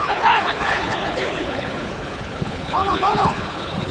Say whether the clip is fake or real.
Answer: fake